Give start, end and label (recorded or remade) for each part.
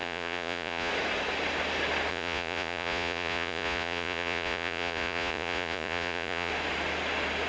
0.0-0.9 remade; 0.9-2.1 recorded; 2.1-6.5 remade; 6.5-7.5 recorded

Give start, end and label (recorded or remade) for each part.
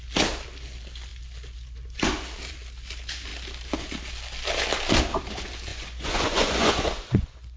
0.0-5.7 recorded; 5.7-7.6 remade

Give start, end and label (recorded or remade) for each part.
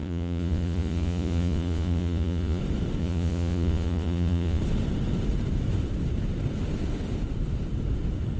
0.0-2.6 remade; 2.6-3.0 recorded; 3.0-4.6 remade; 4.6-8.4 recorded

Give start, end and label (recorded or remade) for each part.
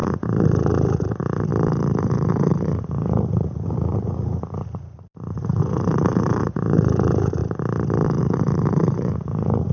0.0-1.5 remade; 1.5-2.0 recorded; 2.0-7.4 remade; 7.4-8.2 recorded; 8.2-9.7 remade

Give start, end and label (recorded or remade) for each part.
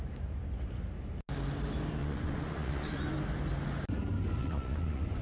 0.0-2.0 recorded; 2.0-3.0 remade; 3.0-4.4 recorded; 4.4-5.2 remade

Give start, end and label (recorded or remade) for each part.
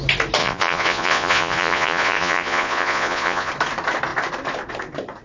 0.0-0.4 recorded; 0.4-3.5 remade; 3.5-5.2 recorded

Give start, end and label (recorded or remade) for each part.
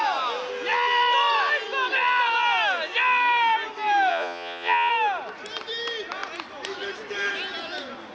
0.0-4.1 recorded; 4.1-4.9 remade; 4.9-8.1 recorded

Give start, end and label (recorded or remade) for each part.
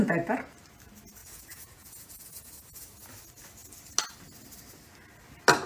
0.0-1.2 recorded; 1.2-2.5 remade; 2.5-5.7 recorded